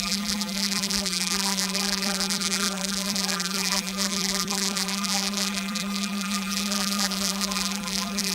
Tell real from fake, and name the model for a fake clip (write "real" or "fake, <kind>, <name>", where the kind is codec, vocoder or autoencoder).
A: fake, vocoder, BigVGAN v2